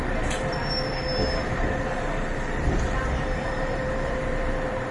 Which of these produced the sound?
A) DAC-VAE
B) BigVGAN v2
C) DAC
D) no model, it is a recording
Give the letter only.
B